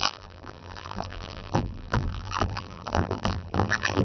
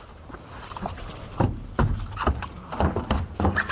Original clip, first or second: second